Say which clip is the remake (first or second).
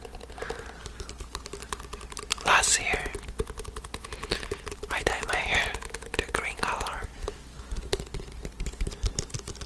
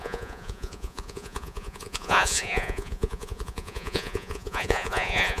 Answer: second